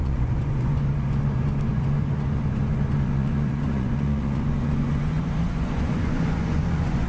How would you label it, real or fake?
fake